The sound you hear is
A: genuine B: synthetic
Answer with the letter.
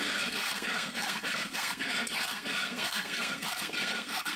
B